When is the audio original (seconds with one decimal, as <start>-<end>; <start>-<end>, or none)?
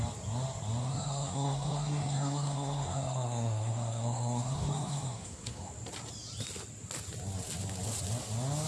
0.0-0.8; 5.7-8.7